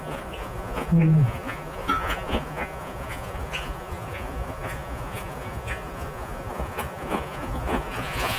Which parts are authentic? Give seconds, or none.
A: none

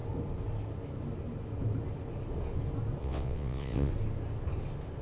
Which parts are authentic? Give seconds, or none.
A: 0.0-3.0; 3.9-5.0